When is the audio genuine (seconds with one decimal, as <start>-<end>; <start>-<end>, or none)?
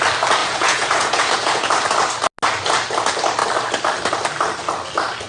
0.0-0.4; 1.7-5.3